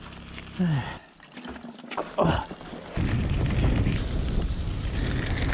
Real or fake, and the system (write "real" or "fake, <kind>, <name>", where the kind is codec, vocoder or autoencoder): real